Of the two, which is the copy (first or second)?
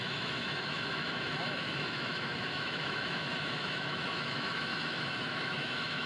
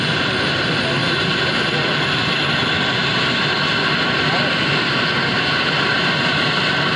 first